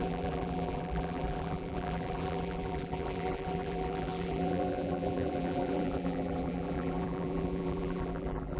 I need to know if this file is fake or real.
fake